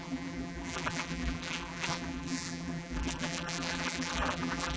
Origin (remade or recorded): remade